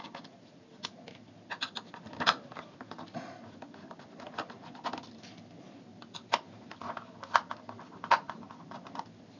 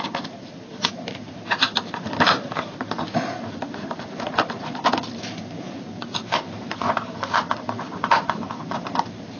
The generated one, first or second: second